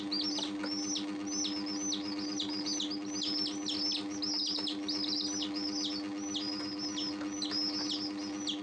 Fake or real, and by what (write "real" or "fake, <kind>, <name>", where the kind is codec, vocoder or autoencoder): real